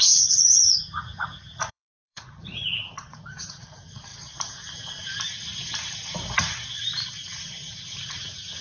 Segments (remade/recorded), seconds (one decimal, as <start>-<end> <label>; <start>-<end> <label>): 0.0-4.1 remade; 4.1-6.8 recorded; 6.8-8.6 remade